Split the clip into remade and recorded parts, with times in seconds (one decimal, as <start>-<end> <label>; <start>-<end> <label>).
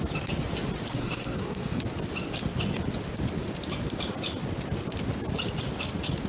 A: 0.0-0.9 recorded; 0.9-1.8 remade; 1.8-6.3 recorded